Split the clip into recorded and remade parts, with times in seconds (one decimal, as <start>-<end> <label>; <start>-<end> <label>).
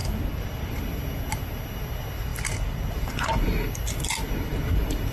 0.0-5.1 recorded